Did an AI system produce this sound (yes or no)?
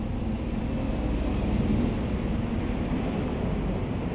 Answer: no